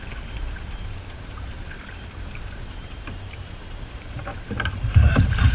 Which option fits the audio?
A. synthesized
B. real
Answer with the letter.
A